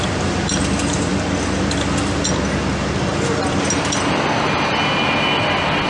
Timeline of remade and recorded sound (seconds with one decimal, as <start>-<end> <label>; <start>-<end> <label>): 0.0-5.9 recorded